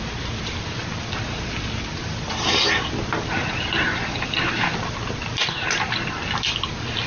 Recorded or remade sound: recorded